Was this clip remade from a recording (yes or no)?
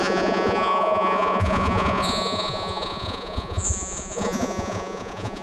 yes